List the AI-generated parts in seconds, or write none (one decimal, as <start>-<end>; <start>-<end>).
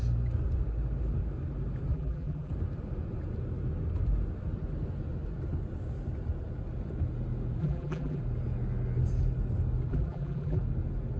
1.9-2.5; 7.6-8.2; 9.9-10.6